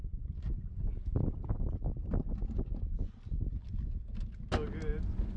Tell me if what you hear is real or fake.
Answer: real